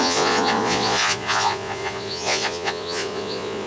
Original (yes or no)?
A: no